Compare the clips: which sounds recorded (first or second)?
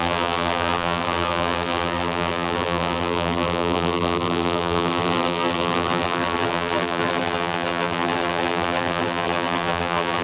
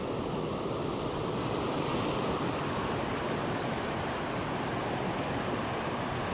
second